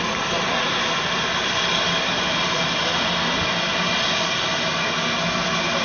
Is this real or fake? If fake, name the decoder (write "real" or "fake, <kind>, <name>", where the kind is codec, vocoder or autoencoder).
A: real